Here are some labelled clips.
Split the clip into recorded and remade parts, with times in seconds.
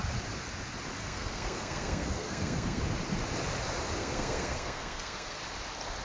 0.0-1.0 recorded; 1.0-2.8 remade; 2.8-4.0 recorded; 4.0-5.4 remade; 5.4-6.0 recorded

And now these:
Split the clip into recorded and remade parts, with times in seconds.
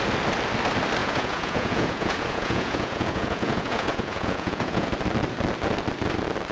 0.0-1.0 recorded; 1.0-4.9 remade; 4.9-6.5 recorded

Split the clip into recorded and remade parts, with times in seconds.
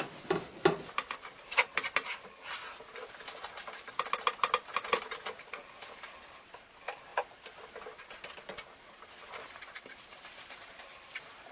0.0-11.5 recorded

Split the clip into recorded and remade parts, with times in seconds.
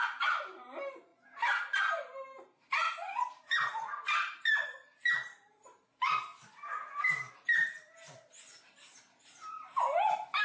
0.0-10.4 remade